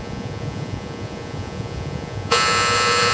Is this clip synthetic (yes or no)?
yes